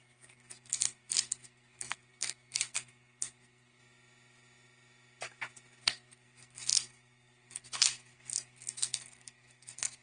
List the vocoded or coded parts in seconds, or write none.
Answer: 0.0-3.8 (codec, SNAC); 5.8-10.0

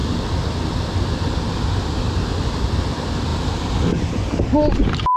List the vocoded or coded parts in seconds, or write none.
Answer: none

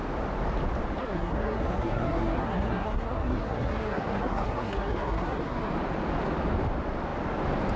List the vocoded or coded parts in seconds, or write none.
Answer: 1.0-5.7 (codec, SNAC)

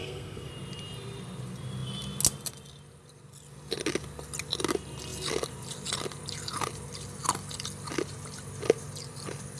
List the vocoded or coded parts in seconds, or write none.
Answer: 0.0-0.5 (codec, SNAC)

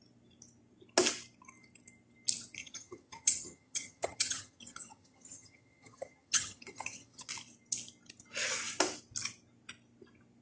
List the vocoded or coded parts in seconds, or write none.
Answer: 2.6-7.3 (vocoder, HiFi-GAN)

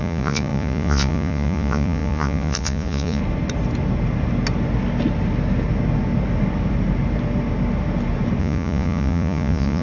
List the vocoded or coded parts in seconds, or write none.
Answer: 0.0-3.2 (vocoder, Vocos); 8.4-9.8